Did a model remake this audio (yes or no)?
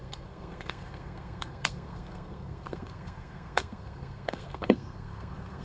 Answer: yes